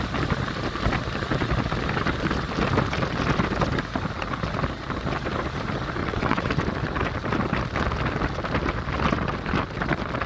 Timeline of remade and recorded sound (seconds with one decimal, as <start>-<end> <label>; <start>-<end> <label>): 0.0-6.0 recorded; 6.0-6.5 remade; 6.5-10.3 recorded